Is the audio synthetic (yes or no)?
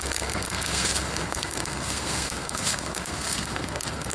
yes